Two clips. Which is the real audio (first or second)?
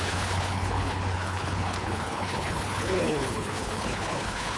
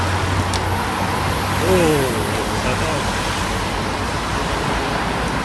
second